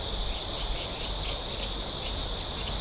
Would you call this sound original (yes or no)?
yes